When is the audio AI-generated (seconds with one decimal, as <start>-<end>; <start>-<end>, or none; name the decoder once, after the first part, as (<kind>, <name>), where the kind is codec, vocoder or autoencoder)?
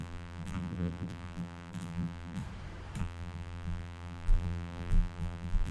0.0-2.4 (vocoder, BigVGAN v2); 3.0-5.7